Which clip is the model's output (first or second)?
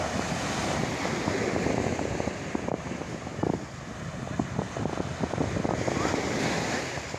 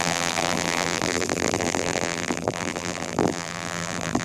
second